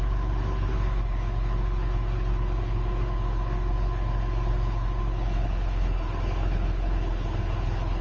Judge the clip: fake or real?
fake